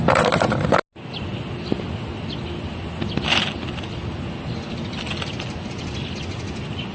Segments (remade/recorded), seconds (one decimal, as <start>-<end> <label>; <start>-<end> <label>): 0.0-6.9 recorded